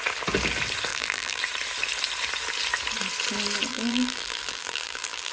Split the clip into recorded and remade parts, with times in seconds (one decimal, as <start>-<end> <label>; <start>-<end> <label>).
0.0-0.9 recorded; 0.9-1.4 remade; 1.4-3.7 recorded; 3.7-5.3 remade

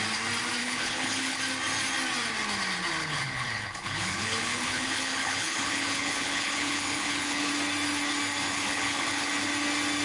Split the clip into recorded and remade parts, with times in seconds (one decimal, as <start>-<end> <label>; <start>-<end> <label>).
0.0-0.6 recorded; 0.6-1.4 remade; 1.4-3.0 recorded; 3.0-7.5 remade; 7.5-8.5 recorded; 8.5-9.3 remade; 9.3-10.0 recorded

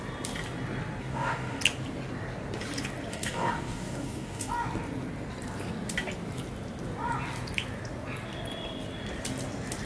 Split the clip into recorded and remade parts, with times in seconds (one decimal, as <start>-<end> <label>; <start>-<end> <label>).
0.0-1.0 recorded; 1.0-1.6 remade; 1.6-3.1 recorded; 3.1-4.5 remade; 4.5-9.9 recorded

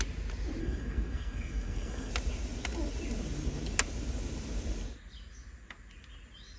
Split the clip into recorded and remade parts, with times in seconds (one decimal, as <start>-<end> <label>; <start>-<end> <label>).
0.0-0.6 recorded; 0.6-2.1 remade; 2.1-6.6 recorded

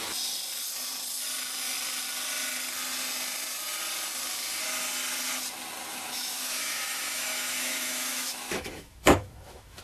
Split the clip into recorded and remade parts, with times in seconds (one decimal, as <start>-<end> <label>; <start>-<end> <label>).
0.0-5.9 recorded; 5.9-9.8 remade

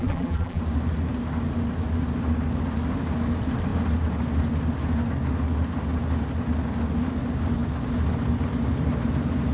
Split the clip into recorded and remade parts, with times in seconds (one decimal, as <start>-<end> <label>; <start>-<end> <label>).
0.0-0.6 remade; 0.6-9.5 recorded

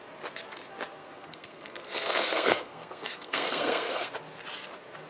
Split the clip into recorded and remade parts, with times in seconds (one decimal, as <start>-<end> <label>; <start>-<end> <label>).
0.0-1.0 recorded; 1.0-4.1 remade; 4.1-5.1 recorded